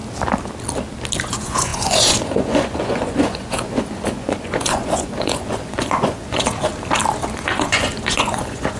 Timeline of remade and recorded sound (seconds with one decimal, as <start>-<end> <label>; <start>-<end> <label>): 0.0-1.2 recorded; 1.2-6.7 remade; 6.7-7.4 recorded; 7.4-8.8 remade